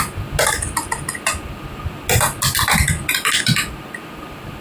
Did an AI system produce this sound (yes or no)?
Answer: no